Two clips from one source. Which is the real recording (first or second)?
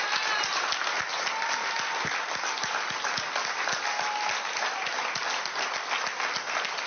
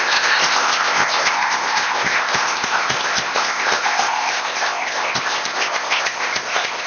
first